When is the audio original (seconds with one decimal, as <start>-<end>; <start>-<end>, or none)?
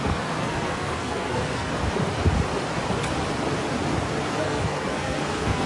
1.7-4.3